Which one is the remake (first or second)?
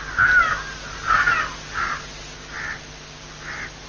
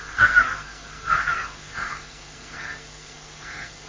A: second